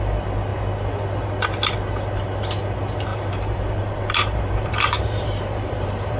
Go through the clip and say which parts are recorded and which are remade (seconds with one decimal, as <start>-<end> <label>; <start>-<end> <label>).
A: 0.0-3.1 recorded; 3.1-6.2 remade